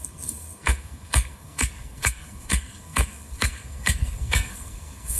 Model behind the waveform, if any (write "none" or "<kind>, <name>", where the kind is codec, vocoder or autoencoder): codec, SNAC